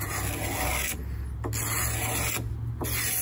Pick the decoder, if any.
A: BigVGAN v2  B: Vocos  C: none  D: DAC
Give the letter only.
C